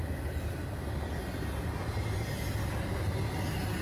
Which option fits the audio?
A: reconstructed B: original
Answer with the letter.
B